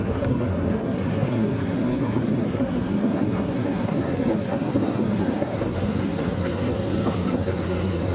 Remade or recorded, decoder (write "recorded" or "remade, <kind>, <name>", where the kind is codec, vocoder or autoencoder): remade, codec, SNAC